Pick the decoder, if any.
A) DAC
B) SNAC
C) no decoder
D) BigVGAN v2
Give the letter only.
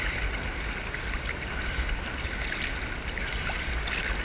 C